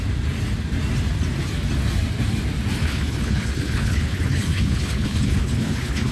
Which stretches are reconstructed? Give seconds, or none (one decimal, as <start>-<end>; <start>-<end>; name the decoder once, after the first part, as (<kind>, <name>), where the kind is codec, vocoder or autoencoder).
2.8-6.1 (codec, HILCodec)